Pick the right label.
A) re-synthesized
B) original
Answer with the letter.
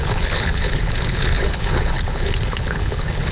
A